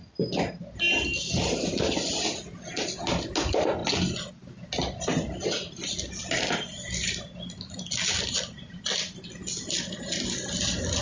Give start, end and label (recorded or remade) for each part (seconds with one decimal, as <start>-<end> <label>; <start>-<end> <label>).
0.0-11.0 recorded